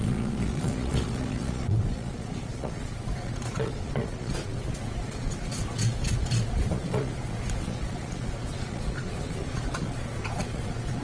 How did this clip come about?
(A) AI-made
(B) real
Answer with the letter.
A